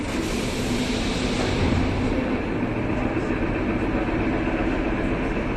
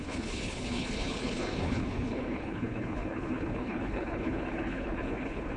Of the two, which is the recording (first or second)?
first